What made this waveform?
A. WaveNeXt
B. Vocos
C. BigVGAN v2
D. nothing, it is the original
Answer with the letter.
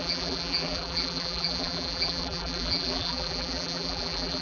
C